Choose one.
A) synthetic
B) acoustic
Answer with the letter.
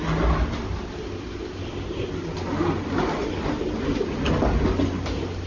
B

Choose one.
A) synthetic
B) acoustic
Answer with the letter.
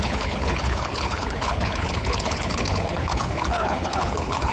A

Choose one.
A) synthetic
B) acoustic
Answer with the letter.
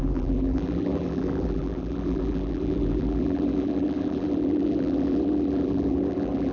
A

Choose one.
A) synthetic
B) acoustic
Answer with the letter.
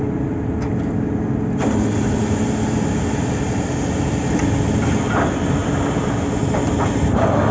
B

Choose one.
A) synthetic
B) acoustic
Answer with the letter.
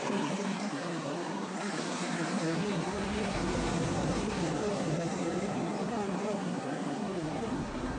A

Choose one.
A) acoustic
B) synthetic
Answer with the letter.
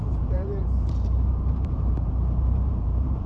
B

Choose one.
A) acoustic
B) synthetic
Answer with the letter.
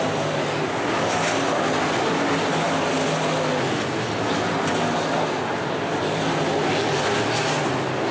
A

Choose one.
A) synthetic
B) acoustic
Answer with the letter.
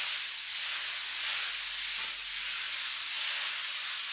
B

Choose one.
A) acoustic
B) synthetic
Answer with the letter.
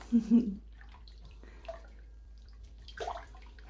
B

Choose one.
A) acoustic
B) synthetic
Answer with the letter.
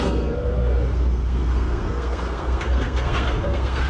B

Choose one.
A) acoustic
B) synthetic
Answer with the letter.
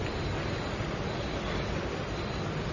A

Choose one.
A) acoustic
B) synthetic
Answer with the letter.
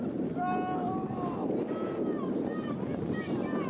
A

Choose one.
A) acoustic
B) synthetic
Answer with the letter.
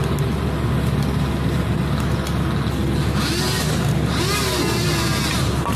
A